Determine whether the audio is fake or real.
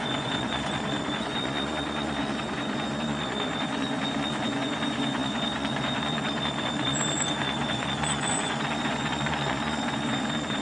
fake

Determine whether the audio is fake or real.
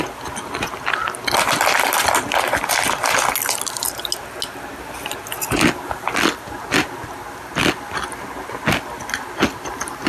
real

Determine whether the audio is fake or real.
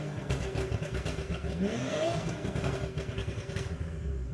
fake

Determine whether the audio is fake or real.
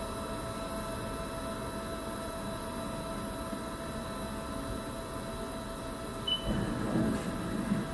real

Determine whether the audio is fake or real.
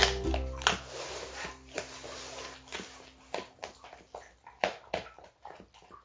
real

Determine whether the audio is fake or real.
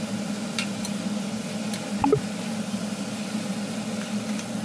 real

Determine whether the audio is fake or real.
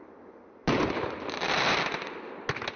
real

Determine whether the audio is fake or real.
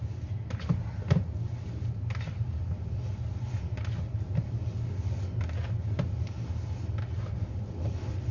real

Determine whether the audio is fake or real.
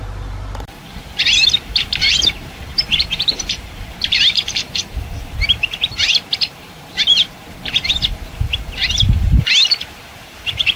fake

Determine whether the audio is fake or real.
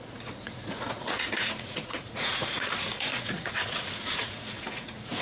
fake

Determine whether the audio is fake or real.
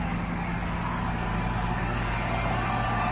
fake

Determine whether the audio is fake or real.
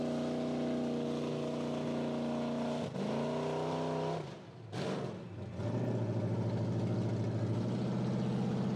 real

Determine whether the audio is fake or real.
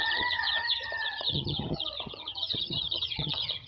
fake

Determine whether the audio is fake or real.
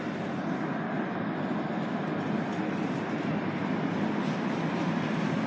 real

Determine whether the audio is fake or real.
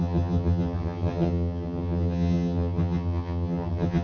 fake